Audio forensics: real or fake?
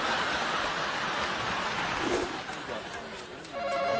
real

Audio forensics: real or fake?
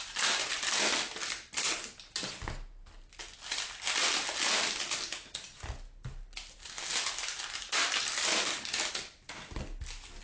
real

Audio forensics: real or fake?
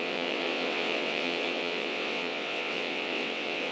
fake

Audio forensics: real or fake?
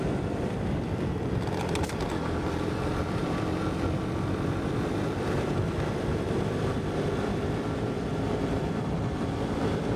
fake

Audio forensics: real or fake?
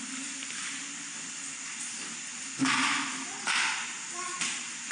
real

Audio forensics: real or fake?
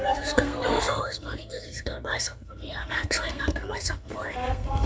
fake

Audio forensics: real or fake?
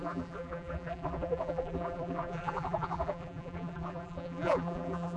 fake